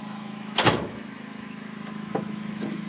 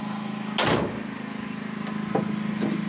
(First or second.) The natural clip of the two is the second